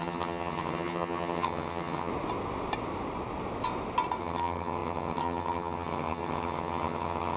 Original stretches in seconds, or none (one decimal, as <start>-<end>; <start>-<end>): 2.1-4.2